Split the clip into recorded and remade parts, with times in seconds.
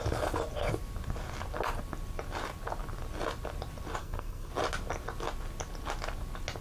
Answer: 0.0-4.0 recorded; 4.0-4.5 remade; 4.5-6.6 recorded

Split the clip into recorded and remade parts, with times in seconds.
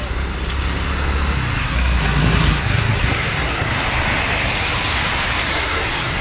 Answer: 0.0-1.6 recorded; 1.6-3.7 remade; 3.7-5.5 recorded; 5.5-6.2 remade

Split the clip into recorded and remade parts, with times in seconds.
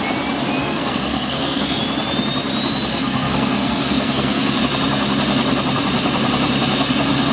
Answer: 0.0-0.6 recorded; 0.6-1.8 remade; 1.8-2.9 recorded; 2.9-4.6 remade; 4.6-7.3 recorded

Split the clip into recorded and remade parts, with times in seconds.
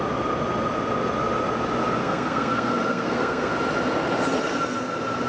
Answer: 0.0-2.0 recorded; 2.0-3.5 remade; 3.5-5.3 recorded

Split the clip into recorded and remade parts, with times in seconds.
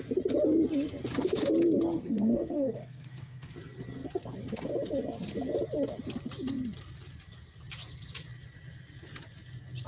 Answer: 0.0-2.0 recorded; 2.0-3.5 remade; 3.5-9.9 recorded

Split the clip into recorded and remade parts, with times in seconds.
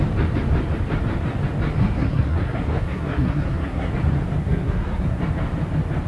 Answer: 0.0-1.8 recorded; 1.8-3.9 remade; 3.9-4.4 recorded; 4.4-5.2 remade; 5.2-6.1 recorded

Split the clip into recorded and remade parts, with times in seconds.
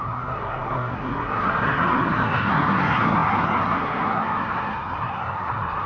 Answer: 0.0-5.9 remade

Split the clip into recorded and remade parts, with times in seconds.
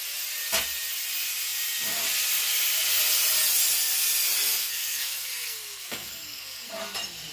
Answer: 0.0-4.6 recorded; 4.6-6.7 remade; 6.7-7.3 recorded